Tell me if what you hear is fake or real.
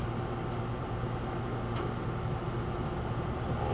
real